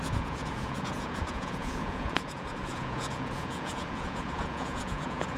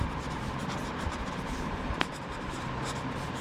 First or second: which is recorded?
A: second